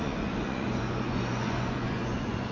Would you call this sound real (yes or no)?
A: no